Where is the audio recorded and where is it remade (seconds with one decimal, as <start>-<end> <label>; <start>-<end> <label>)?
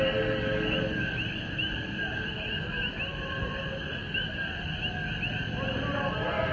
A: 0.0-6.5 recorded